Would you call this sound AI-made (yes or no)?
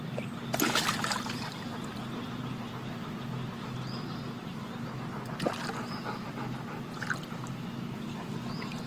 no